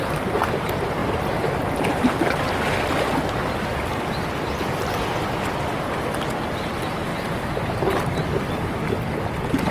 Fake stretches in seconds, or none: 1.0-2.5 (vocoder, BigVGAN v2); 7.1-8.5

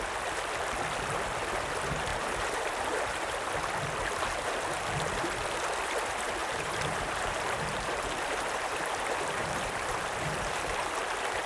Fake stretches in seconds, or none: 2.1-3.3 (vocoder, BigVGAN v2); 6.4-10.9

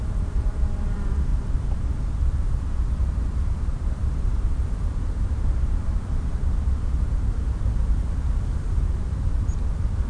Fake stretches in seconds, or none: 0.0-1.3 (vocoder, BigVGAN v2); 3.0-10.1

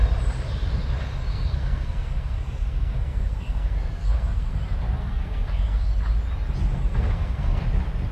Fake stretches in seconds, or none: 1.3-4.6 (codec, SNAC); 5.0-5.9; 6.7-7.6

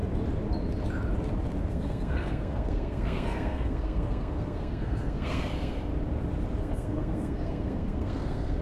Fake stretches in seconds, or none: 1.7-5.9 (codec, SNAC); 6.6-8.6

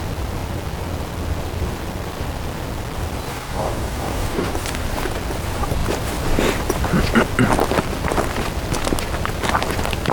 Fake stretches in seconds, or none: 3.3-4.5 (codec, DAC)

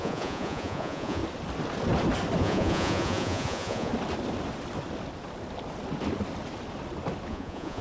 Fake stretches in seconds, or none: 0.0-1.2 (vocoder, Vocos); 2.4-3.9; 7.3-7.8

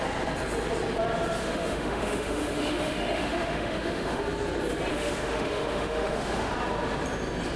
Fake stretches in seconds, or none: 1.4-4.2 (autoencoder, DAC-VAE); 4.9-6.5